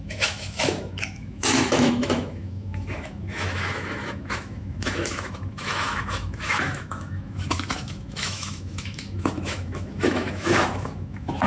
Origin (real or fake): fake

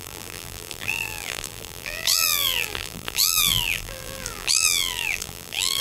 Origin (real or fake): fake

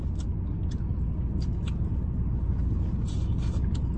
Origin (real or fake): real